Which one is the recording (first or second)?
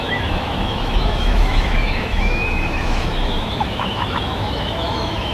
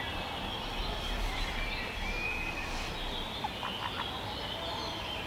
second